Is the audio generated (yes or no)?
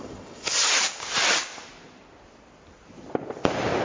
yes